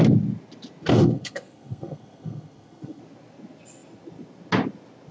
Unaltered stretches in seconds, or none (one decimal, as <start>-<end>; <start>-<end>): 0.0-0.9; 3.0-5.1